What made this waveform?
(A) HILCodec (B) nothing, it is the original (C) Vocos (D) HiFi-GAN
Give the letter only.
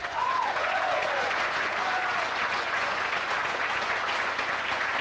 C